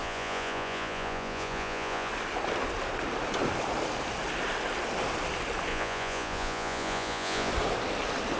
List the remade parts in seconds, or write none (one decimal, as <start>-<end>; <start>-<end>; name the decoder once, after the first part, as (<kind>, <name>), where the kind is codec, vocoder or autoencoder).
0.0-2.1 (vocoder, Vocos); 5.7-7.5